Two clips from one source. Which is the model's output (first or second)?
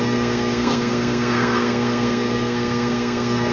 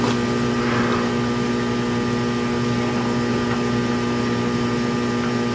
first